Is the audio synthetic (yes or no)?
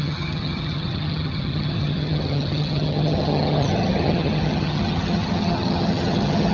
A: yes